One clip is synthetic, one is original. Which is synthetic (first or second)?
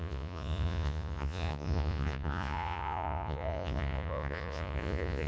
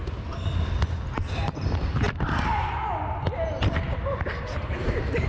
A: first